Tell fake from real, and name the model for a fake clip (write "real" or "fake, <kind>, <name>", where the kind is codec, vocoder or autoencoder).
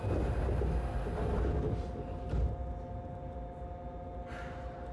real